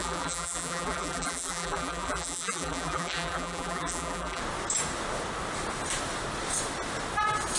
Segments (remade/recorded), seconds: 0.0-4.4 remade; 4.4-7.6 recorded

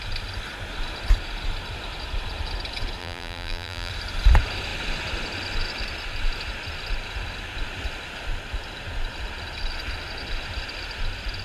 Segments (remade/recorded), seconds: 0.0-3.0 recorded; 3.0-3.9 remade; 3.9-11.4 recorded

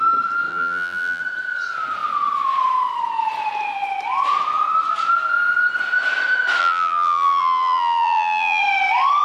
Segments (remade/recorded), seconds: 0.0-0.5 recorded; 0.5-1.2 remade; 1.2-6.6 recorded; 6.6-8.6 remade; 8.6-9.2 recorded

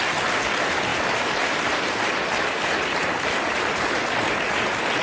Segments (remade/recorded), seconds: 0.0-0.9 recorded; 0.9-3.9 remade; 3.9-5.0 recorded

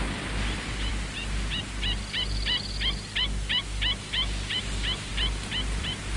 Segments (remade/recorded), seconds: 0.0-6.2 remade